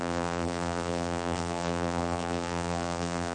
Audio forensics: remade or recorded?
remade